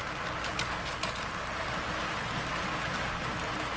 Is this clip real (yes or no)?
yes